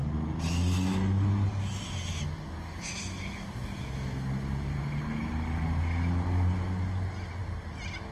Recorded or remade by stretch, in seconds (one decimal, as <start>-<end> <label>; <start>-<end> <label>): 0.0-8.1 recorded